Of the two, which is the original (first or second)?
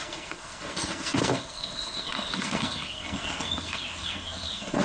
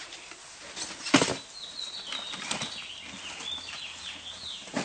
second